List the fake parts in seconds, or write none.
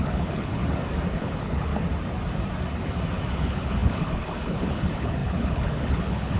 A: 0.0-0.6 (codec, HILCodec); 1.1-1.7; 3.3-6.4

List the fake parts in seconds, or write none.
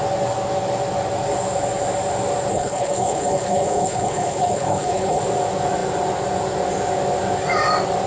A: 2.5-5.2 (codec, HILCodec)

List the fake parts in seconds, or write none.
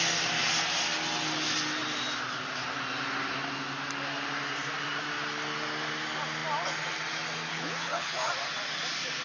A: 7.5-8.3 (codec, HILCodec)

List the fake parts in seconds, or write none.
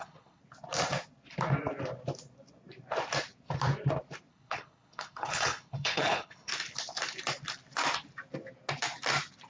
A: 0.0-0.4 (codec, HILCodec); 4.3-6.5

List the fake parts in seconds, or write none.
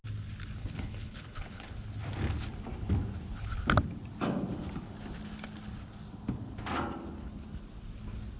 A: 0.6-1.7 (codec, HILCodec)